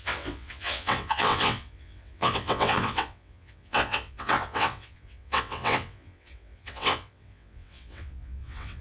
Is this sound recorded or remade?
remade